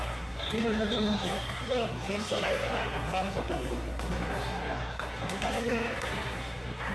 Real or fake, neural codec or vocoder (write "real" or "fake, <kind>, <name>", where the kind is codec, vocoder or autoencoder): fake, codec, SNAC